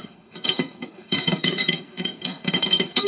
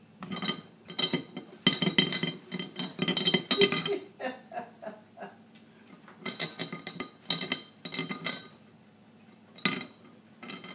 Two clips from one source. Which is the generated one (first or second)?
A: first